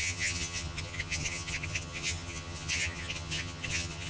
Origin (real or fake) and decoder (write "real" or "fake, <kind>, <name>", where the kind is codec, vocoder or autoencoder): fake, vocoder, HiFi-GAN